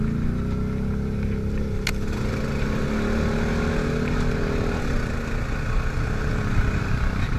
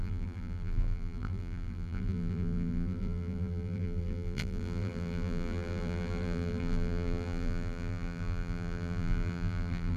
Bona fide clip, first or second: first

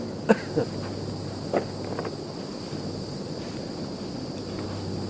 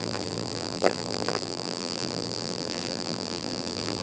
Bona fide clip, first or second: first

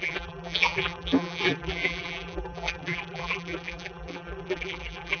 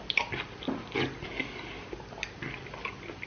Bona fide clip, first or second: second